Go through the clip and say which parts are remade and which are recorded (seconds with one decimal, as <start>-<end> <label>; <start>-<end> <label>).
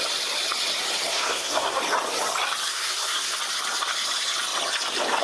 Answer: 0.0-1.1 recorded; 1.1-1.8 remade; 1.8-2.7 recorded; 2.7-3.4 remade; 3.4-5.2 recorded